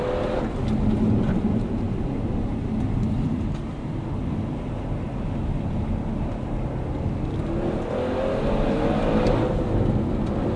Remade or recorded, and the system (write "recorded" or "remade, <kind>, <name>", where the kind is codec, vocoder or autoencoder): recorded